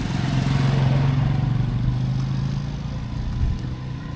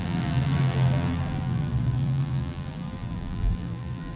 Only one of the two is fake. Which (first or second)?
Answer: second